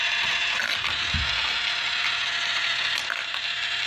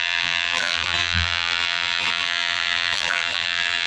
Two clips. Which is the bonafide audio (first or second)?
first